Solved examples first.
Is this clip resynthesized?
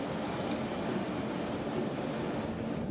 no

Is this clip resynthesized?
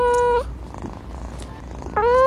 no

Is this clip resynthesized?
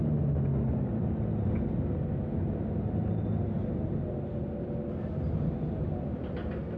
no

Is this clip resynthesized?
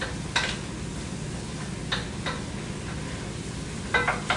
no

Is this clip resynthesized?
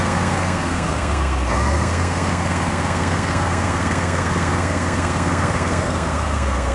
yes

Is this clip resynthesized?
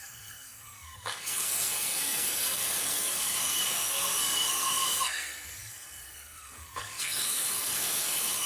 yes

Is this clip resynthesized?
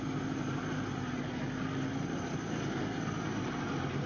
no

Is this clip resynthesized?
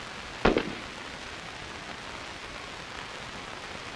no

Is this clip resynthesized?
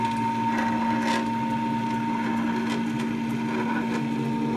no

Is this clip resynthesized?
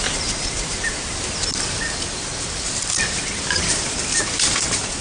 no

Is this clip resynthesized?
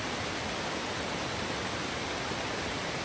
no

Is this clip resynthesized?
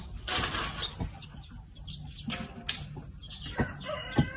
no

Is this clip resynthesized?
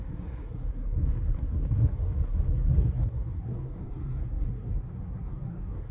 yes